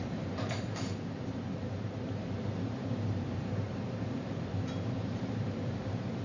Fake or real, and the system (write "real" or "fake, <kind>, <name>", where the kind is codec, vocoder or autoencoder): fake, vocoder, BigVGAN v2